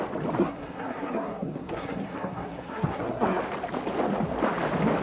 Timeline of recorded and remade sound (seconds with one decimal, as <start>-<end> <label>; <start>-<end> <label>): 0.0-0.4 recorded; 0.4-3.4 remade; 3.4-5.0 recorded